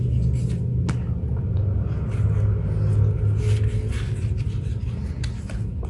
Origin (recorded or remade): recorded